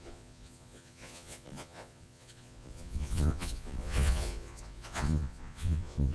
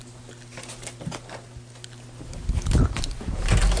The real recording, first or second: second